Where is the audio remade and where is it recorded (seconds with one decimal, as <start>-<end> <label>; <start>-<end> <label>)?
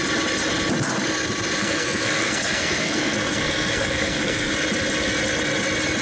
0.0-1.6 recorded; 1.6-4.5 remade; 4.5-6.0 recorded